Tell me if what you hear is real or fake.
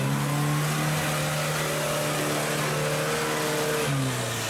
real